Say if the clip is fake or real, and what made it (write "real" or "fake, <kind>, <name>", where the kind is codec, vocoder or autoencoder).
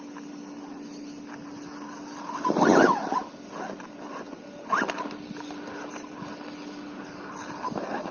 real